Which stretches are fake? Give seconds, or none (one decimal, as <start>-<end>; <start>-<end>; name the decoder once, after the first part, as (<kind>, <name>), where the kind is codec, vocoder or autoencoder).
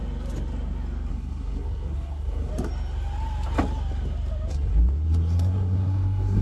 1.1-2.5 (codec, SNAC); 4.5-6.4